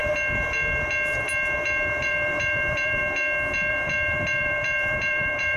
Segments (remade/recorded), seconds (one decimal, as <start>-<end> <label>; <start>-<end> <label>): 0.0-2.0 recorded; 2.0-3.0 remade; 3.0-3.7 recorded; 3.7-5.6 remade